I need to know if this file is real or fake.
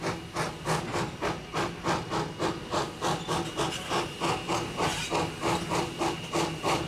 real